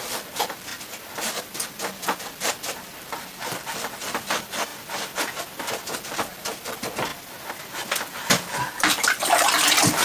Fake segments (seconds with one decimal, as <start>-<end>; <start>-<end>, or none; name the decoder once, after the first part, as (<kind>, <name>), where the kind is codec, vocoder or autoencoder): 0.0-0.7 (vocoder, BigVGAN v2); 2.2-4.7; 6.1-7.1; 8.6-10.0